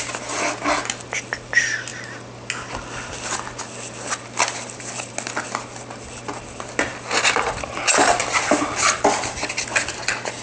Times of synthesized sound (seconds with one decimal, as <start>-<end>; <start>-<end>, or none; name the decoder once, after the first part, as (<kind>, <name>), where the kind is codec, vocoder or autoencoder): none